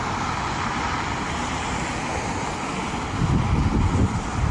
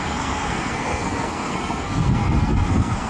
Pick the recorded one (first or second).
first